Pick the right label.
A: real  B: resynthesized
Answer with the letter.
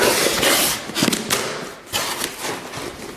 A